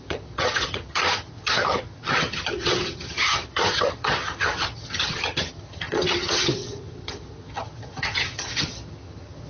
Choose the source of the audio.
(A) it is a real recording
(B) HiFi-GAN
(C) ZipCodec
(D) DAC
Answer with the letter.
B